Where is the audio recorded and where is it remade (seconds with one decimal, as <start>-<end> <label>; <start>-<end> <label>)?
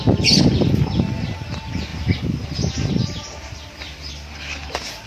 0.0-5.1 recorded